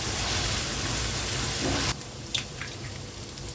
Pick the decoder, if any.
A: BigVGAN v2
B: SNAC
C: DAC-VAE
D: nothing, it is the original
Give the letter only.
A